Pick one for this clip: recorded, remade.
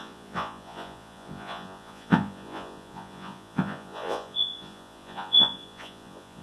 remade